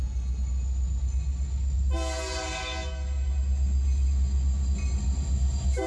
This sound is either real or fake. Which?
real